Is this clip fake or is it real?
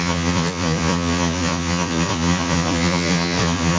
fake